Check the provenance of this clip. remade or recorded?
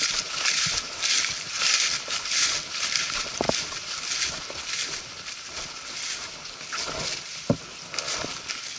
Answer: recorded